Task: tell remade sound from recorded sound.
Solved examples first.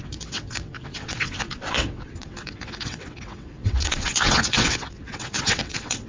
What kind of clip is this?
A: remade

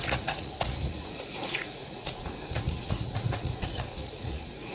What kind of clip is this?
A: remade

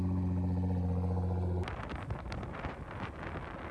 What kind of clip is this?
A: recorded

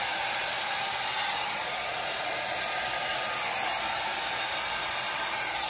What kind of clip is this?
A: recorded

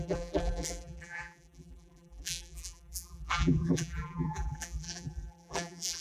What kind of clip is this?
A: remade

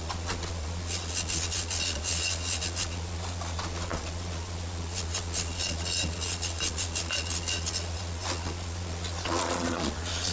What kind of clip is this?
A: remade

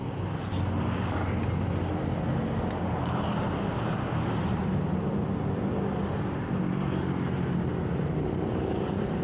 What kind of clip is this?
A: recorded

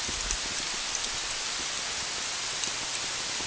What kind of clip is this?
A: recorded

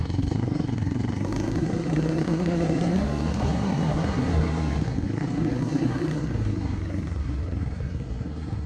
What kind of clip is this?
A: remade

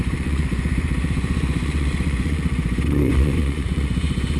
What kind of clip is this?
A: remade